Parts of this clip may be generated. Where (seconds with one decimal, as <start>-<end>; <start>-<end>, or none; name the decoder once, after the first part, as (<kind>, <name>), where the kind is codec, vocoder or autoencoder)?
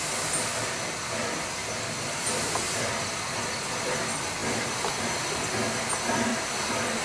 none